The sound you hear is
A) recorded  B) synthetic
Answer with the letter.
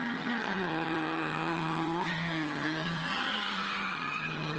B